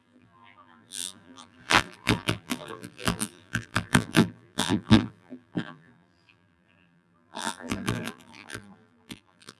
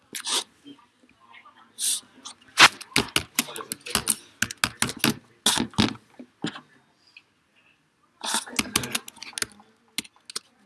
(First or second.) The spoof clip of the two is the first